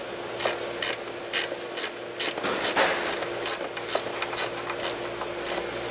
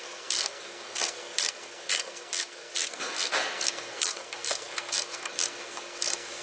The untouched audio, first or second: first